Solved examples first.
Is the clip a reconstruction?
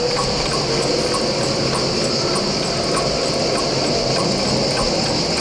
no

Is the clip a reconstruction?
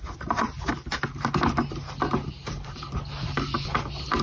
no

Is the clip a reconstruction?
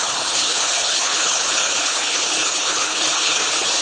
yes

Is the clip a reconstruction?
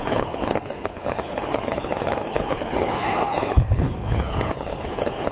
yes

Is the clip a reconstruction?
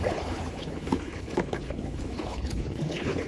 yes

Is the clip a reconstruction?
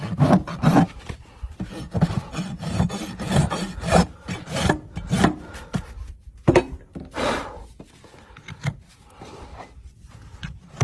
no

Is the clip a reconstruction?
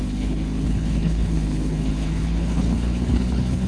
yes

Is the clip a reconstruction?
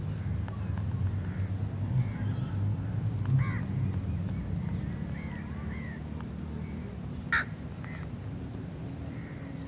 no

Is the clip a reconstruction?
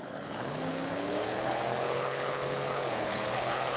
yes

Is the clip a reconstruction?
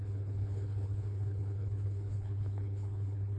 yes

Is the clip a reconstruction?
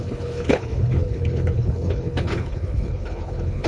yes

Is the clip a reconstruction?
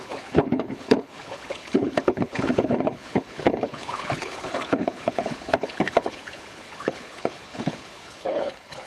yes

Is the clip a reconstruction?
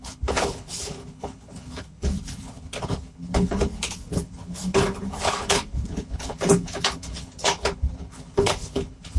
yes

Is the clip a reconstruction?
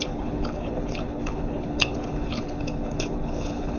yes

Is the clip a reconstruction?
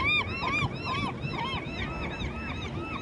no